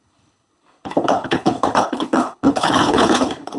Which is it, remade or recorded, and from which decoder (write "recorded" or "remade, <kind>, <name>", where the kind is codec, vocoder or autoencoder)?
remade, codec, HILCodec